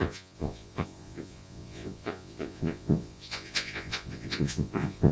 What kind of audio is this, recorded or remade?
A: remade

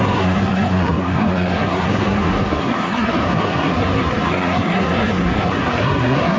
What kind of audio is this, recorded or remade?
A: remade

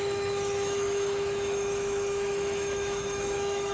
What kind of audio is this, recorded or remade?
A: remade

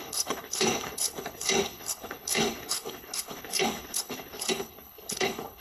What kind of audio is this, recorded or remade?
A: remade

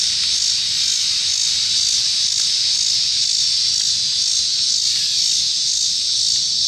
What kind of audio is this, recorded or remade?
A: recorded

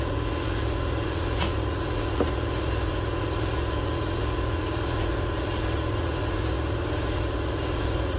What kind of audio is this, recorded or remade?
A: remade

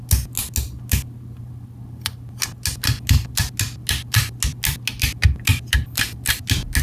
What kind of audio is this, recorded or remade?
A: recorded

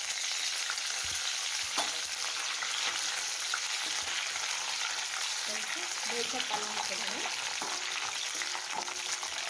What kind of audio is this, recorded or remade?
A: recorded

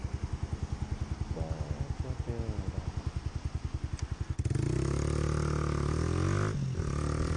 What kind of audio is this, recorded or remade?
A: recorded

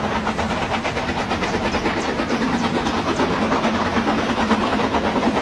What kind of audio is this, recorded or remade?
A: recorded